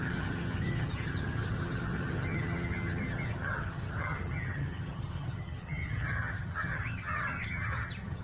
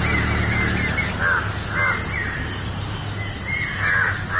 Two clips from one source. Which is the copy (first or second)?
first